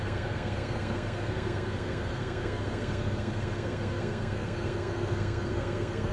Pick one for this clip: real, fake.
fake